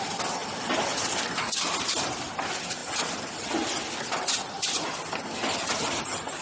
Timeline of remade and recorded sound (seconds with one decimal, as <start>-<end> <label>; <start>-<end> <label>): 0.0-6.4 recorded